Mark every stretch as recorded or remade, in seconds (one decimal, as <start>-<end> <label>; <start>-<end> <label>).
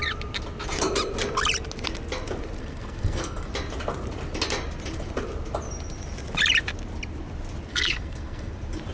0.0-2.6 recorded; 2.6-3.5 remade; 3.5-7.7 recorded; 7.7-8.5 remade; 8.5-8.9 recorded